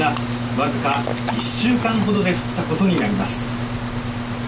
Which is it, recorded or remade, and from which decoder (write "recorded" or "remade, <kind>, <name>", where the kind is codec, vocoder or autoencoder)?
recorded